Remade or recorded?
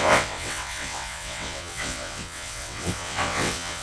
remade